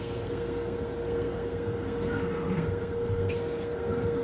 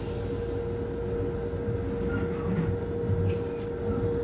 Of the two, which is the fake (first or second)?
first